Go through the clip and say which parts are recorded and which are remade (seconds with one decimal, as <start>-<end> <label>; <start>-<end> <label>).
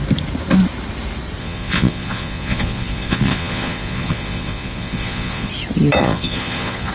0.0-1.4 recorded; 1.4-5.5 remade; 5.5-6.0 recorded; 6.0-6.9 remade